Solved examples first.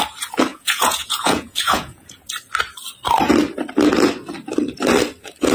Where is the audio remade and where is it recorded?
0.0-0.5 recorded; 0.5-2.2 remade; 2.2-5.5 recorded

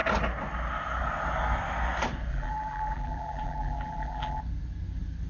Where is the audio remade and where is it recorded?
0.0-2.3 recorded; 2.3-4.4 remade; 4.4-5.3 recorded

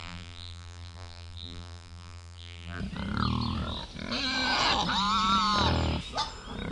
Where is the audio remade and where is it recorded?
0.0-2.8 remade; 2.8-6.7 recorded

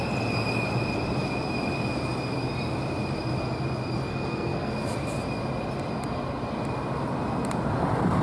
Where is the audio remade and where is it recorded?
0.0-4.1 recorded; 4.1-4.7 remade; 4.7-8.2 recorded